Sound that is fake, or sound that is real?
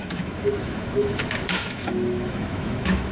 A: fake